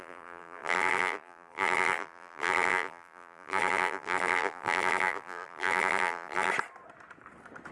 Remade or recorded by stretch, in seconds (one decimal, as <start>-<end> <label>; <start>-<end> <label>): 0.0-6.5 remade; 6.5-7.7 recorded